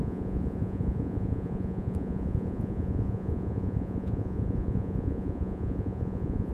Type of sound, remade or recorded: remade